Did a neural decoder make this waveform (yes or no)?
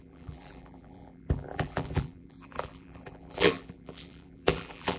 yes